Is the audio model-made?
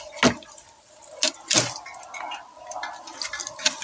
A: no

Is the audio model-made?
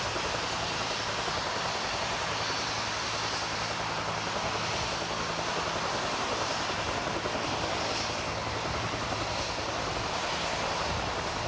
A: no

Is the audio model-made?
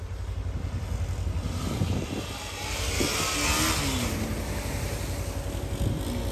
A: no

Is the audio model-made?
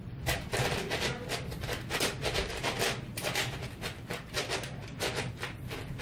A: no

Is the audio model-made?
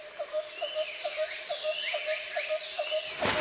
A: no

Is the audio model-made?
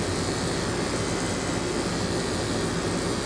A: no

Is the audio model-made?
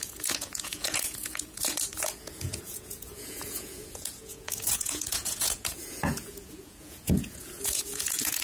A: yes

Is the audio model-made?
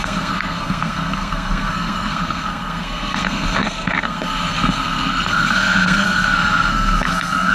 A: yes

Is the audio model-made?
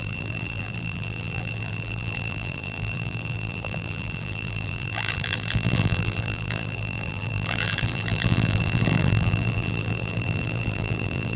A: yes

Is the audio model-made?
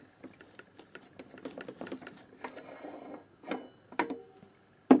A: no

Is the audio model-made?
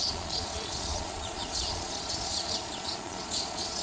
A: yes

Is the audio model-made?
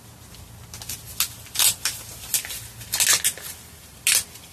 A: no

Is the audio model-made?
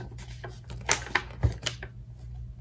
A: no